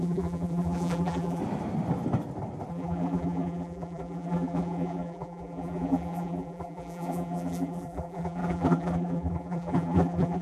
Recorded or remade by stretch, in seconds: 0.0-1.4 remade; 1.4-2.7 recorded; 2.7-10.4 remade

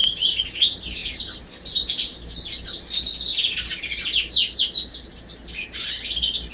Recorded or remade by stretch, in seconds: 0.0-6.5 recorded

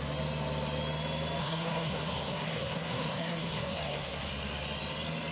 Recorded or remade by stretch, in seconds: 0.0-1.4 recorded; 1.4-4.3 remade; 4.3-5.3 recorded

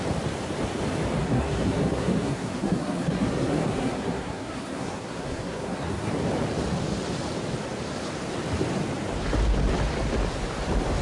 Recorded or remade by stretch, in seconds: 0.0-1.2 recorded; 1.2-6.1 remade; 6.1-11.0 recorded